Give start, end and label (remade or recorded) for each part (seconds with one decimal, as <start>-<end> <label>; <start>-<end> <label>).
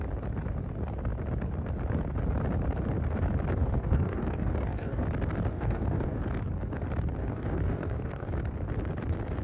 0.0-3.6 recorded; 3.6-5.0 remade; 5.0-5.5 recorded; 5.5-6.2 remade; 6.2-7.2 recorded; 7.2-8.3 remade; 8.3-9.4 recorded